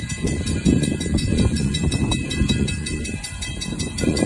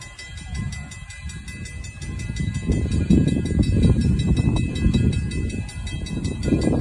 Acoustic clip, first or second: second